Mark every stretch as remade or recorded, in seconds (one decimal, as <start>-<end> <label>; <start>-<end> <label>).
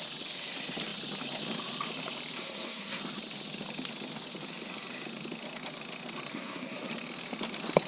0.0-2.4 recorded; 2.4-3.0 remade; 3.0-6.3 recorded; 6.3-6.9 remade; 6.9-7.9 recorded